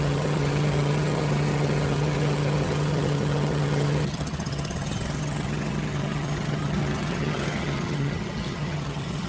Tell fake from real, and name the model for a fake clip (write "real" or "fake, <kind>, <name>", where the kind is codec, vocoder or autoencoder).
fake, vocoder, HiFi-GAN